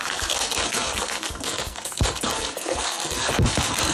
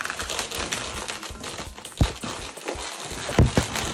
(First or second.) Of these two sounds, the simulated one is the first